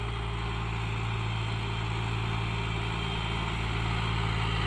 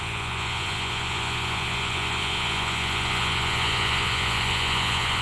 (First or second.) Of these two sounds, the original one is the first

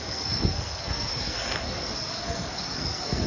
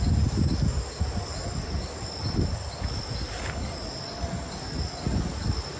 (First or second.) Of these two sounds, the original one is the second